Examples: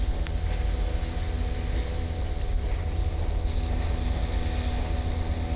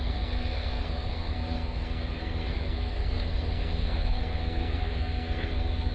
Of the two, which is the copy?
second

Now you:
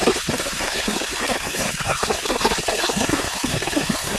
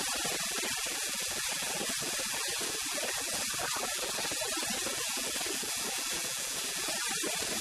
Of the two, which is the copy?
first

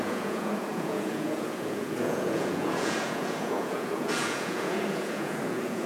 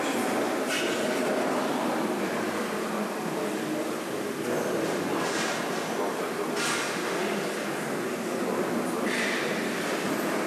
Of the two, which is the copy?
first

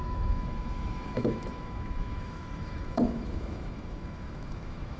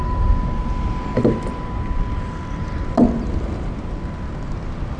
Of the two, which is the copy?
first